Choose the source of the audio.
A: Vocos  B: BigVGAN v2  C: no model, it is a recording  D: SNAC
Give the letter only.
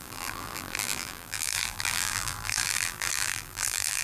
B